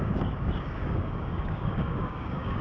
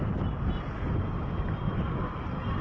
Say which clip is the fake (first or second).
first